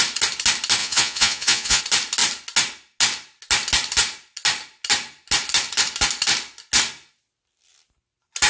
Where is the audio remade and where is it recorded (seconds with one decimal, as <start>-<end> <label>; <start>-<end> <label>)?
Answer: 0.0-0.8 recorded; 0.8-1.8 remade; 1.8-8.5 recorded